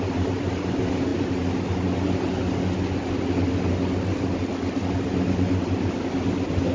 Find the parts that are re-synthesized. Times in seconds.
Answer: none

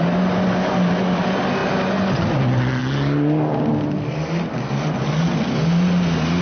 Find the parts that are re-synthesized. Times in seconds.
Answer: none

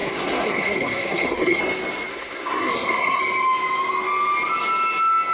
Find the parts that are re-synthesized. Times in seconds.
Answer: 0.0-1.6 (codec, SNAC); 2.1-3.2

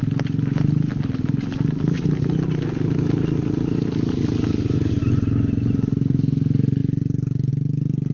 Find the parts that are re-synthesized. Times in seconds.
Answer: none

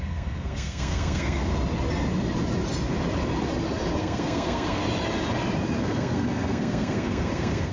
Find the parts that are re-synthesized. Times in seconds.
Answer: 0.0-1.5 (codec, SNAC); 4.0-4.8; 5.8-7.7

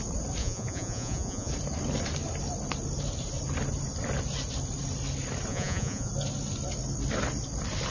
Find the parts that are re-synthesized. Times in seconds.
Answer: 0.4-1.5 (vocoder, Vocos); 5.5-6.1

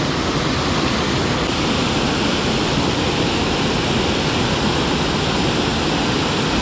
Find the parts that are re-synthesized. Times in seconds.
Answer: none

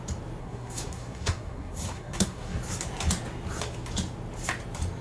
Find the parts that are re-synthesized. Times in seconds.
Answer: 0.4-2.6 (codec, SNAC)